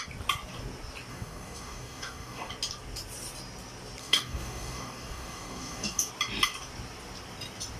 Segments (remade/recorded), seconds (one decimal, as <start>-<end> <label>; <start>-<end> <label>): 0.0-1.1 recorded; 1.1-2.5 remade; 2.5-4.0 recorded; 4.0-6.1 remade; 6.1-7.8 recorded